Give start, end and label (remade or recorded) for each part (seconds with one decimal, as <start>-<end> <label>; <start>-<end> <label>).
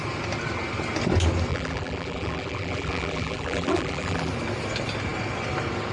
0.0-1.5 recorded; 1.5-4.3 remade; 4.3-5.9 recorded